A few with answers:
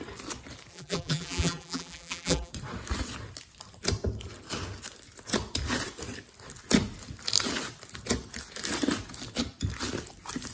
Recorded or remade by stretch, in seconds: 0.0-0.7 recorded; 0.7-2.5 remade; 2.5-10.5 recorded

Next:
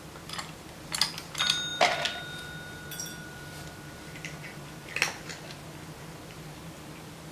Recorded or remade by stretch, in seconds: 0.0-7.3 recorded

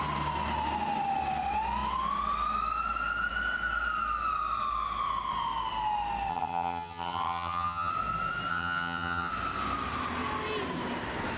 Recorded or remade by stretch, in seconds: 0.0-6.3 recorded; 6.3-7.9 remade; 7.9-8.5 recorded; 8.5-9.3 remade; 9.3-11.4 recorded

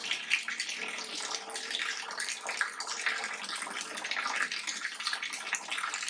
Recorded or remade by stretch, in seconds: 0.0-6.1 recorded